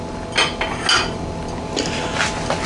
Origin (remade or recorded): recorded